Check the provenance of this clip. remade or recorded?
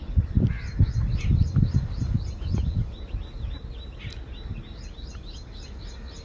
recorded